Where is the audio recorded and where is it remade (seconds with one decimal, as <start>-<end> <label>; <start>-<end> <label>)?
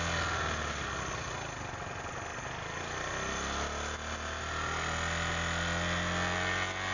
0.0-6.9 recorded